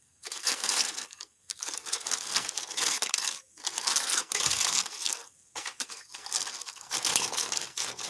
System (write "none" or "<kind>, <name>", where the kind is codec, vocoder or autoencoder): codec, SNAC